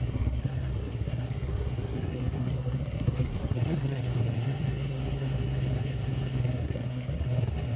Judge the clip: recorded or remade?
remade